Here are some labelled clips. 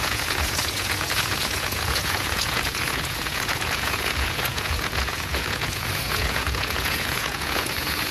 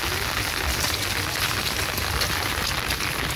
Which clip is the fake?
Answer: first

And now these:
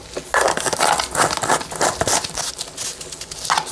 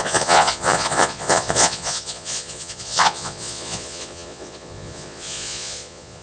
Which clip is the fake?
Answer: second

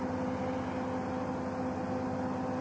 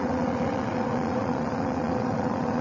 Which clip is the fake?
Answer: second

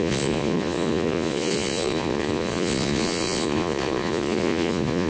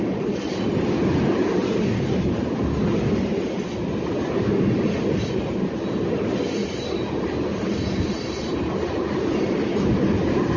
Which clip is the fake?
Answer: first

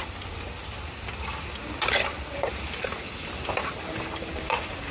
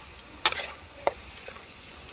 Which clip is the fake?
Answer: second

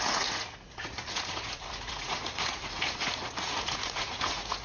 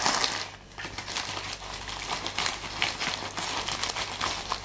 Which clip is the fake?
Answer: first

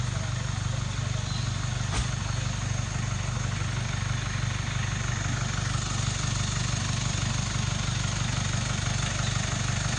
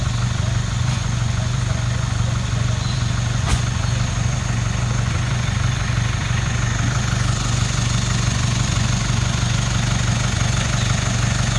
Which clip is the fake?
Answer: second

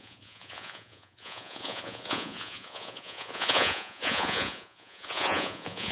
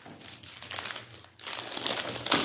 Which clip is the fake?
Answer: first